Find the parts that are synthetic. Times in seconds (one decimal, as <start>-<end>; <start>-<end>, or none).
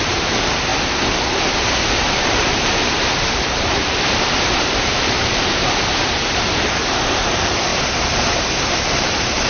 0.0-0.7; 1.9-7.7; 8.8-9.5